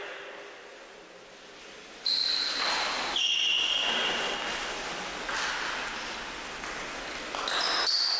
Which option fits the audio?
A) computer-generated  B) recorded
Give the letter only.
B